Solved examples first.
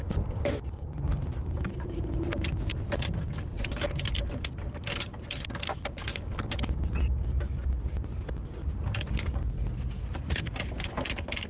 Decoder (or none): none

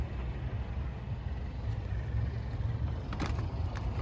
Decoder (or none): none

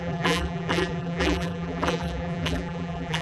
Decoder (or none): vocoder, BigVGAN v2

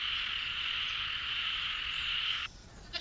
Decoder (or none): vocoder, Vocos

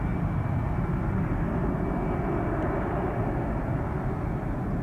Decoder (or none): none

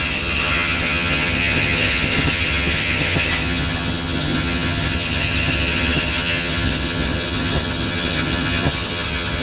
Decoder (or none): vocoder, HiFi-GAN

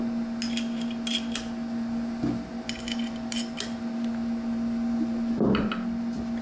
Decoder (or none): none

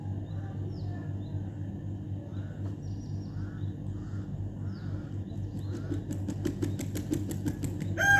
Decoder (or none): none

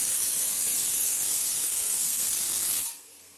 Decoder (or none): codec, SNAC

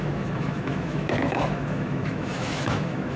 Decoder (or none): autoencoder, DAC-VAE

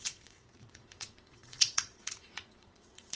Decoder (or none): vocoder, Vocos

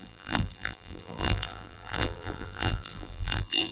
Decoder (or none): vocoder, BigVGAN v2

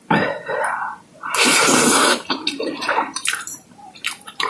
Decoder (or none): vocoder, BigVGAN v2